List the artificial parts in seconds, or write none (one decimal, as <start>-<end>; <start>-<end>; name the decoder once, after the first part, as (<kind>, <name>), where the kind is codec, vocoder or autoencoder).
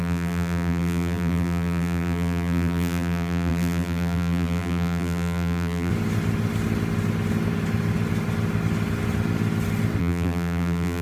0.0-5.9 (vocoder, BigVGAN v2); 10.0-11.0